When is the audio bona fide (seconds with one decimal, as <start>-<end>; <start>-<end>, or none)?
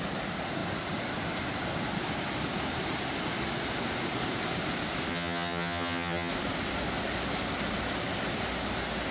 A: 0.0-5.1; 6.3-9.1